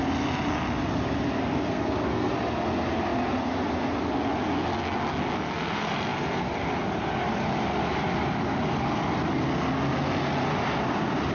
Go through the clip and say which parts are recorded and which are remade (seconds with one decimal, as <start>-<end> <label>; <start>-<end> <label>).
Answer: 0.0-1.4 recorded; 1.4-2.3 remade; 2.3-11.3 recorded